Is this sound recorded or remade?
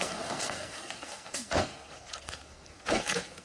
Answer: remade